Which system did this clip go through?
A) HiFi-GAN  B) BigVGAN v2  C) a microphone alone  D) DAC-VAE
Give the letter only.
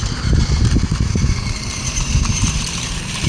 B